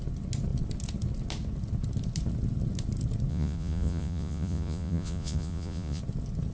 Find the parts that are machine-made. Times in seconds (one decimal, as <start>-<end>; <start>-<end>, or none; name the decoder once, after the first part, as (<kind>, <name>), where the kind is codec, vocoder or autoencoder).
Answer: 3.3-6.0 (vocoder, Vocos)